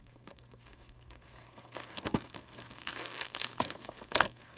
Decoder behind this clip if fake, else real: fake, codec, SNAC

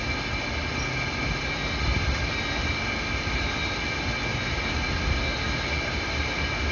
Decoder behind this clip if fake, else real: real